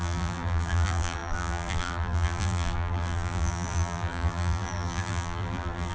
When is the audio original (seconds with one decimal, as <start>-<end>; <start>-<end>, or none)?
none